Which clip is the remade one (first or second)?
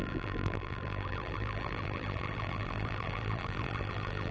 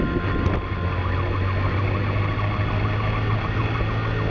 first